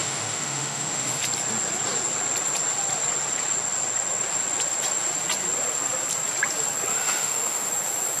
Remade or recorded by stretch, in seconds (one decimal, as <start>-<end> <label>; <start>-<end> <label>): 0.0-1.2 remade; 1.2-6.9 recorded; 6.9-7.7 remade; 7.7-8.2 recorded